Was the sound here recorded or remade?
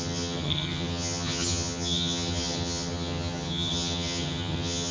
remade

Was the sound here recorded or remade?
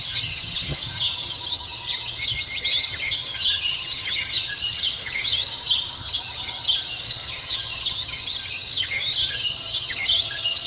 remade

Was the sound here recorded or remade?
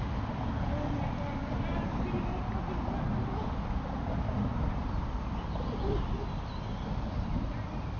recorded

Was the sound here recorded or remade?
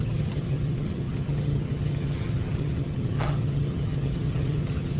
remade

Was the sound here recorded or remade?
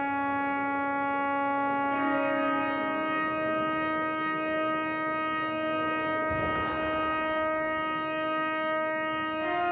recorded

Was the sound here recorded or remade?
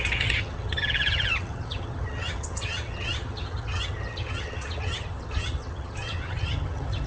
remade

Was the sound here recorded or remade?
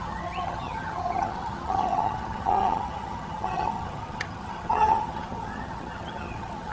remade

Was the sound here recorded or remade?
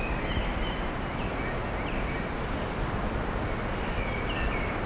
recorded